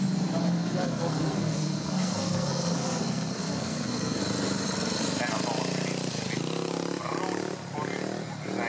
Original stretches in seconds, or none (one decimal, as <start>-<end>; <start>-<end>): 0.0-0.4; 4.2-8.7